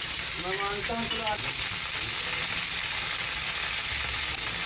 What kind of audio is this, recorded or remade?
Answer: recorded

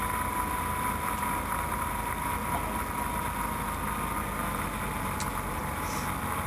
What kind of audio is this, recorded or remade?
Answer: recorded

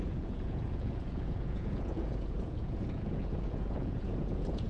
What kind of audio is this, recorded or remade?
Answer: remade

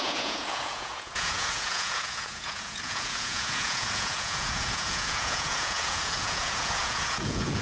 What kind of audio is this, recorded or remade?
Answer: remade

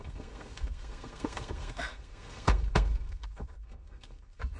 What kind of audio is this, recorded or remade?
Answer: remade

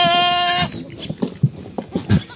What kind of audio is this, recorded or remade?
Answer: recorded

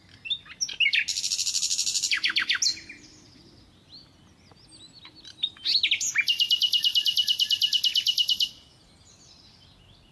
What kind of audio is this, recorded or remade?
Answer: recorded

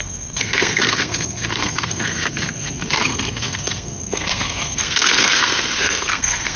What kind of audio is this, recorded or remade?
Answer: remade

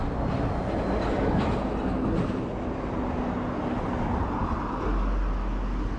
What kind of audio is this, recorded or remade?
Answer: recorded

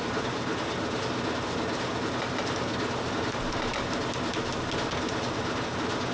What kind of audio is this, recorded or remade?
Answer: recorded